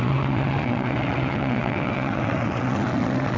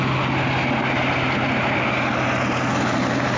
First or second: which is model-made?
first